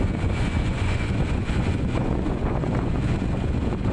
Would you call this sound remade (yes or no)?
yes